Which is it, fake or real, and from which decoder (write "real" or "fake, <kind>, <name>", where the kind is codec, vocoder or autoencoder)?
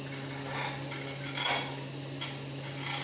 real